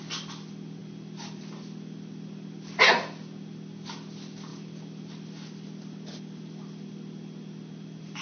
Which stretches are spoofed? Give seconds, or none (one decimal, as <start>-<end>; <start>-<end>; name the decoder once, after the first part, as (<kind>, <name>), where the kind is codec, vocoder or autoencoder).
none